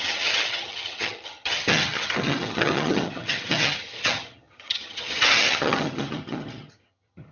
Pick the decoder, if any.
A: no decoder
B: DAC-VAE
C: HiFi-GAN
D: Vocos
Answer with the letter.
C